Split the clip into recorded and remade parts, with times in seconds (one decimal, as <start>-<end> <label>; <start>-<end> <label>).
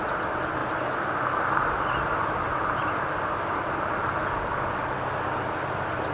0.0-6.1 recorded